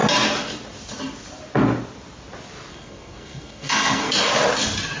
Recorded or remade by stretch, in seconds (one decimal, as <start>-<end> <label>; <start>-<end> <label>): 0.0-2.7 recorded; 2.7-4.1 remade; 4.1-5.0 recorded

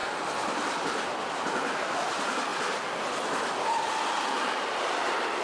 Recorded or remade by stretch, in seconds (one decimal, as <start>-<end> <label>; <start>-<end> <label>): 0.0-1.3 recorded; 1.3-2.5 remade; 2.5-3.8 recorded; 3.8-5.4 remade